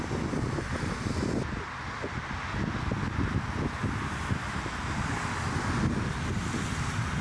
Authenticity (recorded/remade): recorded